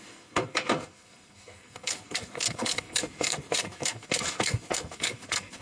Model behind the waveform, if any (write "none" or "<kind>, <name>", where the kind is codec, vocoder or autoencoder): codec, SNAC